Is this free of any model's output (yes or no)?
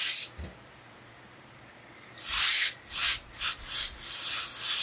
yes